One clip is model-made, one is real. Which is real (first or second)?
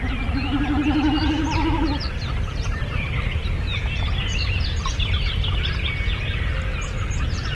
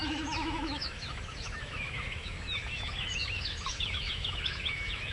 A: first